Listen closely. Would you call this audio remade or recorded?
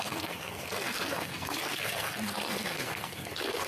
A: remade